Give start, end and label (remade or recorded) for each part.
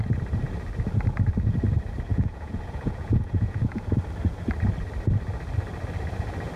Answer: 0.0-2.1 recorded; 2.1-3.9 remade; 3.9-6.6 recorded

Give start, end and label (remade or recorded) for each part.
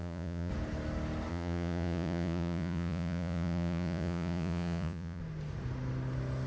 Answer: 0.0-0.5 remade; 0.5-1.3 recorded; 1.3-5.2 remade; 5.2-6.5 recorded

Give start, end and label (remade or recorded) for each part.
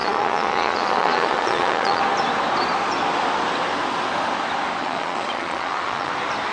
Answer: 0.0-2.0 remade; 2.0-4.8 recorded; 4.8-6.1 remade; 6.1-6.5 recorded